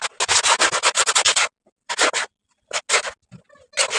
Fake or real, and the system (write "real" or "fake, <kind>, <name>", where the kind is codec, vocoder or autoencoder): real